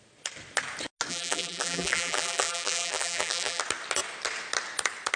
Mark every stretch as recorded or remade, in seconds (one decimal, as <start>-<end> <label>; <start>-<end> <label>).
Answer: 0.0-1.1 recorded; 1.1-3.6 remade; 3.6-5.2 recorded